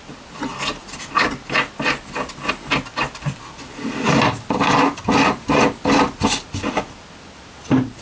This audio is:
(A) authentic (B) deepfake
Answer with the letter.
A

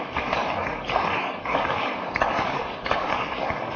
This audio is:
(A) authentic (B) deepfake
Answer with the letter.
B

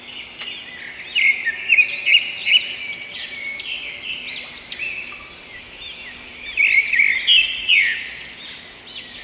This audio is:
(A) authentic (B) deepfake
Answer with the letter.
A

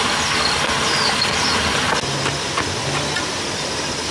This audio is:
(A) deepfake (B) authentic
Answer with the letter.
B